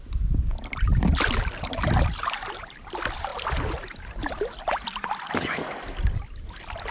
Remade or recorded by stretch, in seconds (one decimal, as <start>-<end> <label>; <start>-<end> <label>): 0.0-6.9 recorded